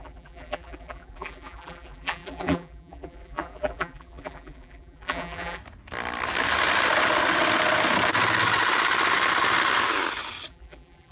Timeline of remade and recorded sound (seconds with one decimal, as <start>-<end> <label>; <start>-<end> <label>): 0.0-5.6 remade; 5.6-10.5 recorded; 10.5-11.1 remade